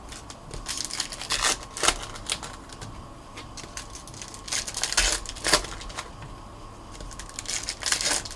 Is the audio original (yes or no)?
yes